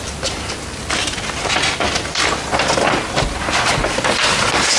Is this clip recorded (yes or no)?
yes